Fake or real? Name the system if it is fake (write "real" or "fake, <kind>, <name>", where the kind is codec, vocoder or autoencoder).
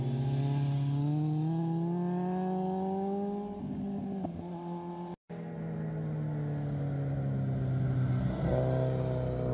real